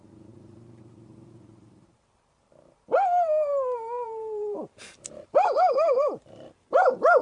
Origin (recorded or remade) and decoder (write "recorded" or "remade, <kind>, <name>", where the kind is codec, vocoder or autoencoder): remade, vocoder, BigVGAN v2